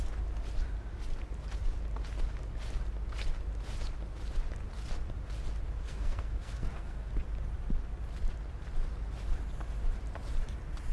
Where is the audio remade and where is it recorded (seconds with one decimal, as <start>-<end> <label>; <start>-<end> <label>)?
0.0-5.8 recorded; 5.8-7.1 remade; 7.1-10.9 recorded